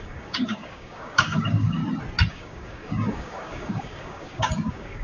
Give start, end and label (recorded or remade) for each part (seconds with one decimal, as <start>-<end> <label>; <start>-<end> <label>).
0.0-1.8 remade; 1.8-2.3 recorded; 2.3-5.0 remade